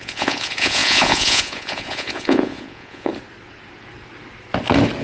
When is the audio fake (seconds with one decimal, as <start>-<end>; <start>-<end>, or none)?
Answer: 0.0-3.1